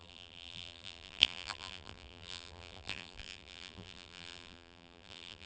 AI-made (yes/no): yes